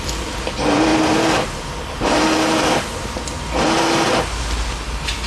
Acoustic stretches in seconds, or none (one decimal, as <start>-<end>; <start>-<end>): 0.0-5.3